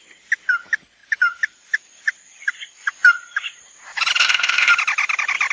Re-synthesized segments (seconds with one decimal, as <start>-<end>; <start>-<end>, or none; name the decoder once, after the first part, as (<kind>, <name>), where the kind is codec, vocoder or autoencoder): 4.2-4.7 (codec, ZipCodec)